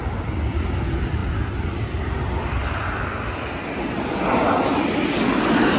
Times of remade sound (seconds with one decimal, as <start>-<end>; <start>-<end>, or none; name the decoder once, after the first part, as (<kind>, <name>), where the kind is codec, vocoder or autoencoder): none